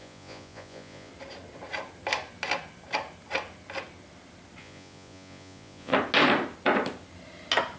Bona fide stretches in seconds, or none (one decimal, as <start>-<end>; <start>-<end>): 1.1-4.6; 5.9-7.8